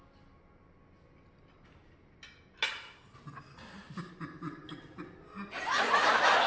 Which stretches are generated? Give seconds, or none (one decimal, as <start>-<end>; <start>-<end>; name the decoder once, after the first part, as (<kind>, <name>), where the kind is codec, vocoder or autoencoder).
none